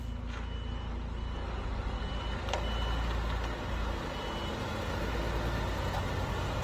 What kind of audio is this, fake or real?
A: real